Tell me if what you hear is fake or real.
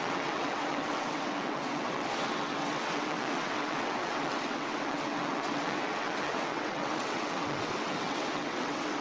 fake